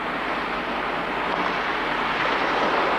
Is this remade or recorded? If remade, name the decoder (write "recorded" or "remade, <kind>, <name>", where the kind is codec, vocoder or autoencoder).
remade, vocoder, BigVGAN v2